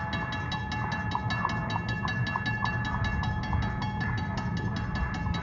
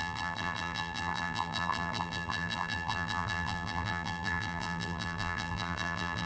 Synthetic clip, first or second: second